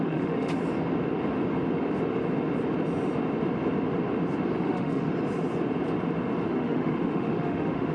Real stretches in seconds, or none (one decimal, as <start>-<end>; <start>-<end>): 0.5-4.6; 5.1-6.5